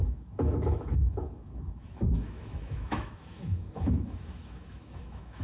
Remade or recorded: remade